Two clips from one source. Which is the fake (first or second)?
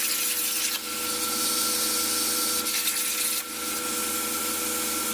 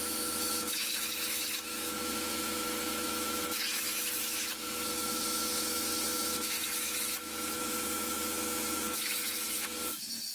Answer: second